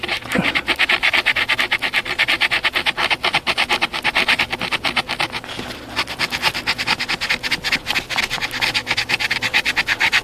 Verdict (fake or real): real